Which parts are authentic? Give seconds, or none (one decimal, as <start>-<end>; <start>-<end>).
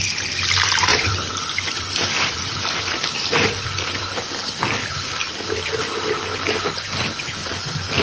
0.0-0.9; 5.7-7.4